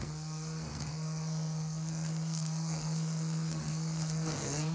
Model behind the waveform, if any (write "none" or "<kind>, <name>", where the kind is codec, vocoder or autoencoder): codec, SNAC